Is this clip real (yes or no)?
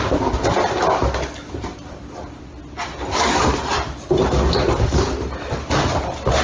yes